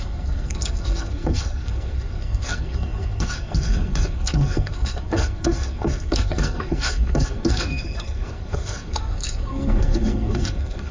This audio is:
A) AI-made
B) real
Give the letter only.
A